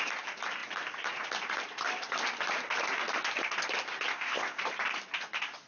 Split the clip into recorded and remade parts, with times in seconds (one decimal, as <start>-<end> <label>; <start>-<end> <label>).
0.0-4.1 recorded; 4.1-4.6 remade; 4.6-5.7 recorded